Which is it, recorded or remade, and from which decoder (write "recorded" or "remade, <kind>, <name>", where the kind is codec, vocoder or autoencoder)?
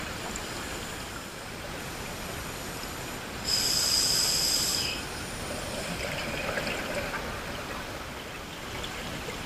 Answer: recorded